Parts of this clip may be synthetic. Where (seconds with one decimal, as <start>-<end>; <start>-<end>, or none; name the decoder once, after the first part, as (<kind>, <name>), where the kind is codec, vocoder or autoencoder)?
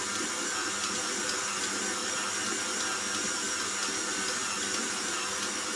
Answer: none